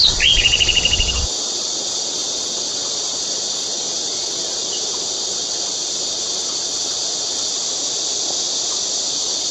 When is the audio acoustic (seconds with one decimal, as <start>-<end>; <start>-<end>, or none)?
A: 7.5-9.1